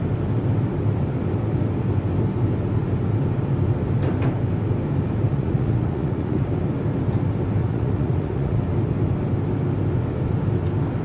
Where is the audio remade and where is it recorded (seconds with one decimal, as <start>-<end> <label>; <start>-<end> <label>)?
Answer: 0.0-5.3 recorded; 5.3-6.4 remade; 6.4-7.6 recorded; 7.6-8.6 remade; 8.6-11.0 recorded